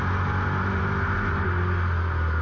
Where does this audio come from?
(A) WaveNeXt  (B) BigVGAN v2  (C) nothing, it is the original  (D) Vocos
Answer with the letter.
C